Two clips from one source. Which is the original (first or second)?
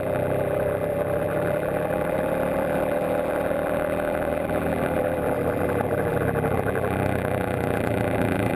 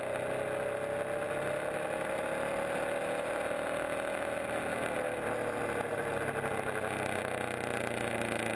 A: second